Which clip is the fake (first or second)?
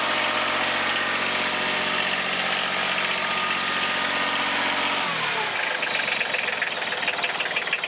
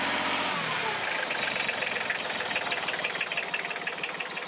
second